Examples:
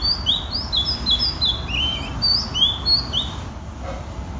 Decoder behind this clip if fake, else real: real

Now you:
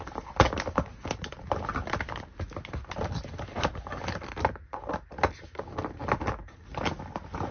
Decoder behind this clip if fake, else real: real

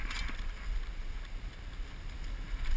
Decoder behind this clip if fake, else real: real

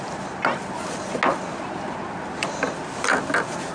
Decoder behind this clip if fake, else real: real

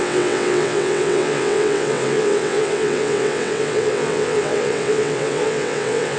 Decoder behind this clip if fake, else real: fake, vocoder, WaveNeXt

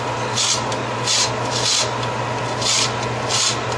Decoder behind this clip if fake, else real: real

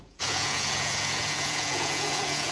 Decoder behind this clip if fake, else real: fake, vocoder, Vocos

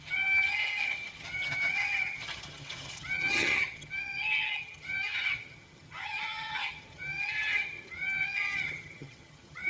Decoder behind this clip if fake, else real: fake, vocoder, HiFi-GAN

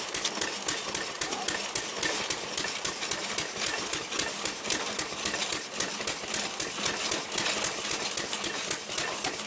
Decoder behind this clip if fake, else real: real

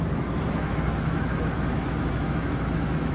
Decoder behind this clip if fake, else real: fake, autoencoder, DAC-VAE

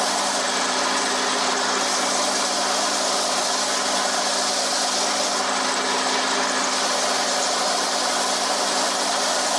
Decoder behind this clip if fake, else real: real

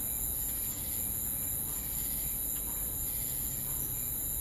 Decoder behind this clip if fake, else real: real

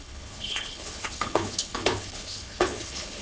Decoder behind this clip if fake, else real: fake, codec, HILCodec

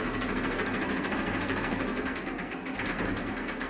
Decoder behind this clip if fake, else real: fake, codec, SNAC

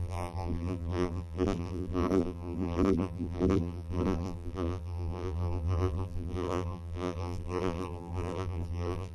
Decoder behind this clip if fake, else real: fake, vocoder, BigVGAN v2